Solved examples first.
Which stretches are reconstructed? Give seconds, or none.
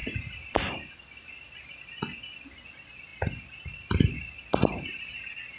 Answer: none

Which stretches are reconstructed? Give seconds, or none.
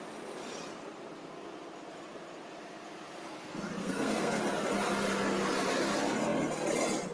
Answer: 3.8-4.4 (codec, SNAC)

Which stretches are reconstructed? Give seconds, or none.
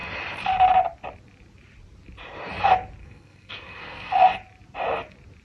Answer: 3.0-4.1 (codec, SNAC)